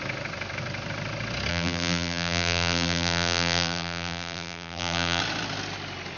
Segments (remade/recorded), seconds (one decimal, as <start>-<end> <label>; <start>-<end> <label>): 0.0-1.5 recorded; 1.5-5.2 remade; 5.2-6.2 recorded